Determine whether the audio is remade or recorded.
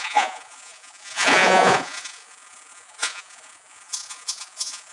remade